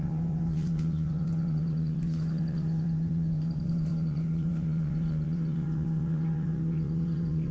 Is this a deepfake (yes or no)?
yes